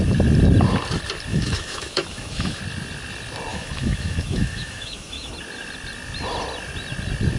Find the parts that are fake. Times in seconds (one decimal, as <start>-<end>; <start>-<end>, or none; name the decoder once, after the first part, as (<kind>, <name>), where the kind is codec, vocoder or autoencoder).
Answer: 1.3-2.6 (autoencoder, DAC-VAE); 3.5-5.3